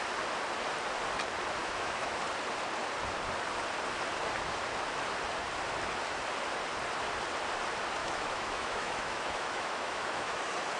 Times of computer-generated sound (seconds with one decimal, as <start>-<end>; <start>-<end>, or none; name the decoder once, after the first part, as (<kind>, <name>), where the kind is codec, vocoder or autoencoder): 1.6-2.2 (autoencoder, DAC-VAE); 8.0-10.4